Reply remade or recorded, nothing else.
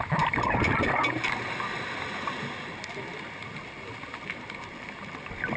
recorded